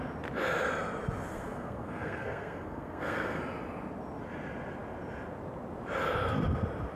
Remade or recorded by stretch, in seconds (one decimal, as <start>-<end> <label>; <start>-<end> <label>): 0.0-1.3 recorded; 1.3-3.4 remade; 3.4-7.0 recorded

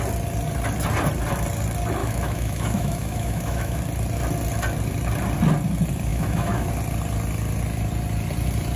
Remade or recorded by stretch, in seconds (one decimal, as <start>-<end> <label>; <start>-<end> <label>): 0.0-2.0 recorded; 2.0-3.8 remade; 3.8-6.1 recorded; 6.1-6.7 remade; 6.7-8.8 recorded